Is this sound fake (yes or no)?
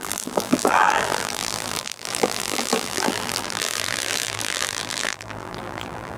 yes